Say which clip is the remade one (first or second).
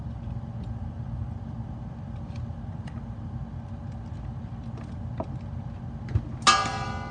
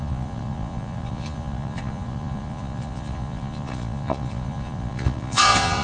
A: second